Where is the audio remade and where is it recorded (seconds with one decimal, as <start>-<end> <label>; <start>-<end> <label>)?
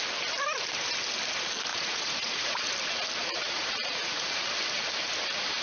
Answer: 0.0-1.7 recorded; 1.7-2.7 remade; 2.7-3.2 recorded; 3.2-4.4 remade; 4.4-5.6 recorded